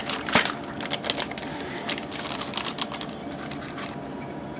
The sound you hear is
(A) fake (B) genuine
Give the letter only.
B